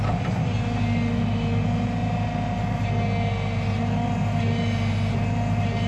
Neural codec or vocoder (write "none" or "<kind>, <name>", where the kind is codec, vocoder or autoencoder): none